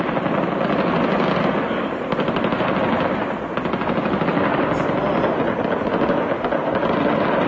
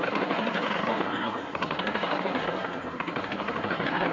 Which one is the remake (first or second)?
second